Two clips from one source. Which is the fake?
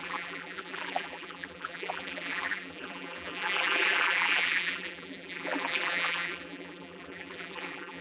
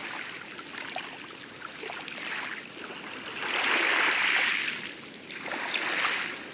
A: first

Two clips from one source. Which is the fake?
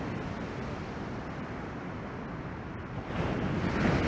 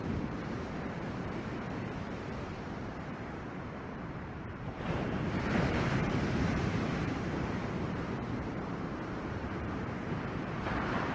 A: second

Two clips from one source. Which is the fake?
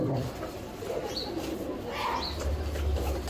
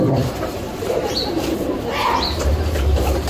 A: second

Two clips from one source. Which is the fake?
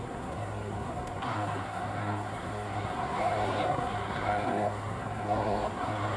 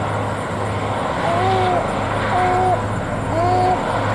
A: first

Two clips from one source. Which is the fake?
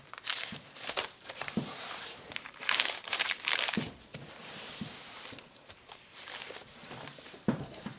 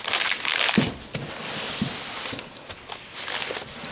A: first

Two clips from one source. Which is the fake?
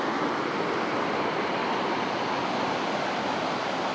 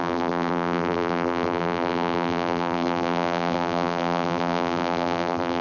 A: second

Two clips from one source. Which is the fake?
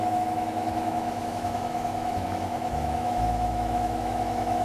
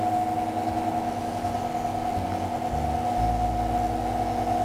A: first